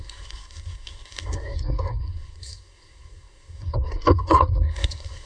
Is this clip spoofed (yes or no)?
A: yes